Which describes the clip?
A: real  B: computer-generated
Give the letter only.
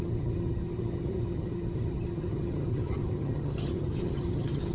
B